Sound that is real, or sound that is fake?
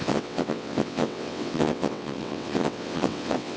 fake